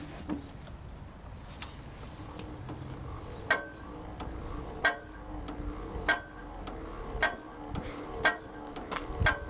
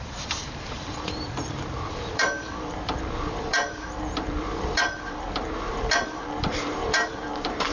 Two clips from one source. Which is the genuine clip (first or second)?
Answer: first